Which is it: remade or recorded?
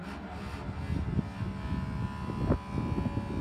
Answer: recorded